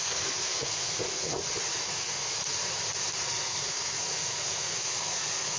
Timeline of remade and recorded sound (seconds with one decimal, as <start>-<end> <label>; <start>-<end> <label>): 0.0-1.3 remade; 1.3-2.0 recorded; 2.0-2.4 remade; 2.4-3.2 recorded; 3.2-5.6 remade